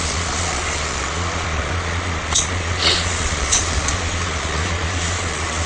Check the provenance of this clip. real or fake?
fake